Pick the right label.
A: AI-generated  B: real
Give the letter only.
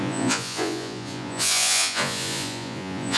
A